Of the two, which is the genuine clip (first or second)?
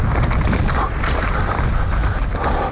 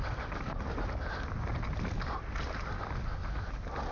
second